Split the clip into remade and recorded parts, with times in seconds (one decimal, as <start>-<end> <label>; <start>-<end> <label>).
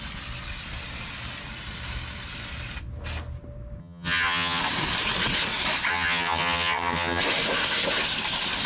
0.0-3.8 recorded; 3.8-4.6 remade; 4.6-5.9 recorded; 5.9-7.2 remade; 7.2-8.7 recorded